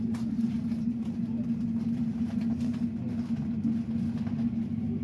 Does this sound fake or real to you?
real